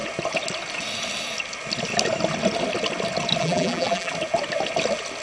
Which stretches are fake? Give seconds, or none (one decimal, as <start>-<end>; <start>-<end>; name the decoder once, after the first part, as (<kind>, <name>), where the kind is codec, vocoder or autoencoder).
3.4-4.1 (vocoder, BigVGAN v2)